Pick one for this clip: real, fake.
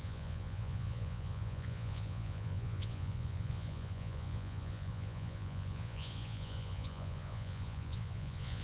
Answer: fake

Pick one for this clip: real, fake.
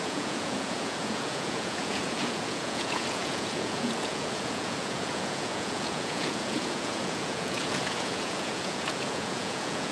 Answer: fake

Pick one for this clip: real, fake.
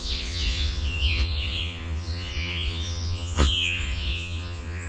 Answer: fake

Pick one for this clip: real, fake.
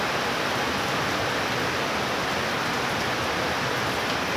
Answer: real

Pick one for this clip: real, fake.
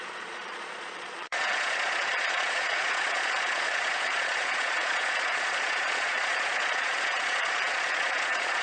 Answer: fake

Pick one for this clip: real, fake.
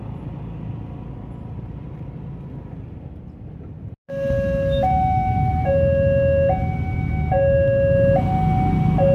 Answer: real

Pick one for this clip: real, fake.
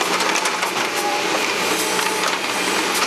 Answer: real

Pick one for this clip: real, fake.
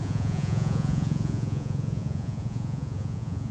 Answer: fake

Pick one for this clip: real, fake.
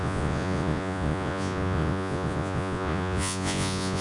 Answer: fake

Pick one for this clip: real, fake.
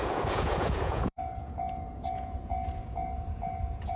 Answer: fake